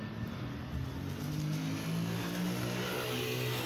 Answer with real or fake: real